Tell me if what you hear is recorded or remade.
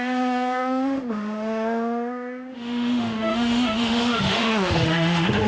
remade